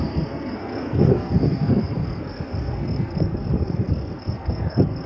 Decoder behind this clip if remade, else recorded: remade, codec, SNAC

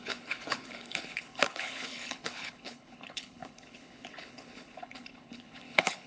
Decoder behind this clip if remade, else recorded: remade, codec, HILCodec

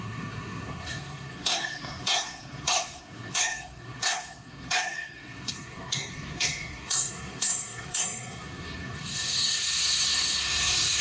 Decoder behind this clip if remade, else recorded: remade, codec, SNAC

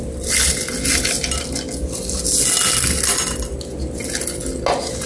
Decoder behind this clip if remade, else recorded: recorded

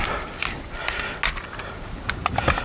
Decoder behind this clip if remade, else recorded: recorded